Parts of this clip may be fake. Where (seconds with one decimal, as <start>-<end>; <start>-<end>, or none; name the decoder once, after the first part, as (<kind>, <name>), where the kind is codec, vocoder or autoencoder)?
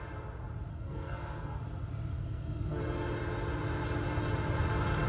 0.7-1.6 (codec, SNAC); 2.1-2.8